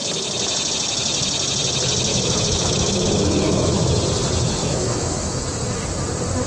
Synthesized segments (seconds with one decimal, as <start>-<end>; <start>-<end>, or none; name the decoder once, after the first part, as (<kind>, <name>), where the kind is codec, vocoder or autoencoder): 2.1-4.0 (autoencoder, DAC-VAE); 4.6-5.4